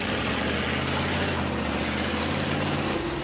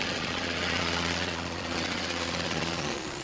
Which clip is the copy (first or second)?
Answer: second